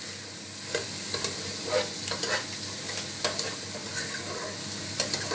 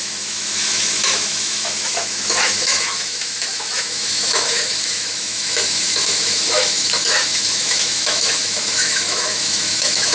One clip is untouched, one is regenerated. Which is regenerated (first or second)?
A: second